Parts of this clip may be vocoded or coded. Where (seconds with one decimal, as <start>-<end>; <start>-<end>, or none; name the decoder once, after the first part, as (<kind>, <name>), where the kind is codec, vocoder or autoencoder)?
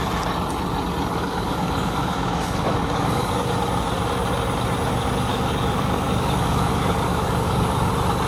1.1-3.5 (codec, DAC); 5.3-7.9